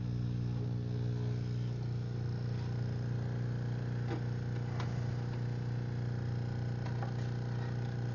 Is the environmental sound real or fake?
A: real